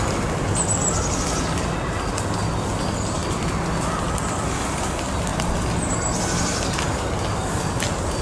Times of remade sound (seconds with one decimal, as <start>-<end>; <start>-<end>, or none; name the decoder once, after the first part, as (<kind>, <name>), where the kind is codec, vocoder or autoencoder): none